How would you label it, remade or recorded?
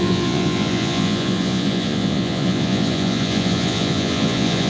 remade